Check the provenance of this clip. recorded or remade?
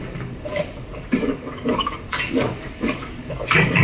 remade